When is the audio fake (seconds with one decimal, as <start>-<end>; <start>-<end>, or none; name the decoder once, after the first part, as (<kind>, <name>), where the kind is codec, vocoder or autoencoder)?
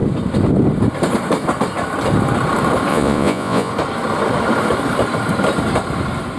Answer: 2.9-3.7 (vocoder, Vocos)